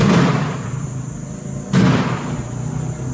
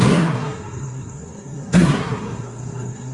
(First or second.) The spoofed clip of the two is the second